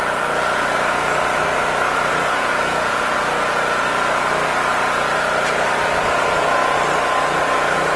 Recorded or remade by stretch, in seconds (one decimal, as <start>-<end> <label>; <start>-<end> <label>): 0.0-6.6 remade; 6.6-7.4 recorded; 7.4-8.0 remade